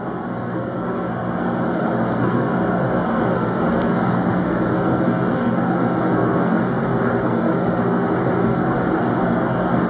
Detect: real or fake fake